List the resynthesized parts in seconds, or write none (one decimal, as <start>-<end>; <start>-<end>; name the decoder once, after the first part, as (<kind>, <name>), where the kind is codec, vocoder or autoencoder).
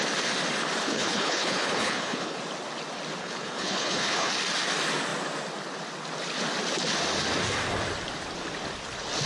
0.8-2.4 (codec, HILCodec); 3.2-4.3